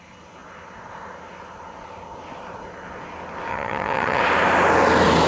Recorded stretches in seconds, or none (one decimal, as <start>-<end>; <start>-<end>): 0.0-3.5; 4.2-5.3